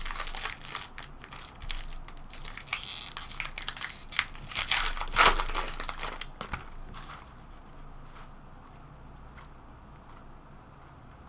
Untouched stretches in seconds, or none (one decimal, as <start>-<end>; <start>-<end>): 0.0-11.3